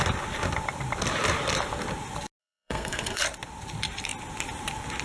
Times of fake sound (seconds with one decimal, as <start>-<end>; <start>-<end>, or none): 2.4-3.2